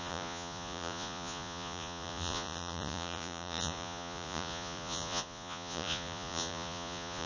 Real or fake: fake